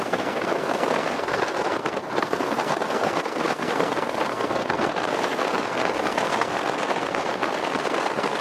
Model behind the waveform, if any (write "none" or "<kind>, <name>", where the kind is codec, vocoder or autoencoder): codec, SNAC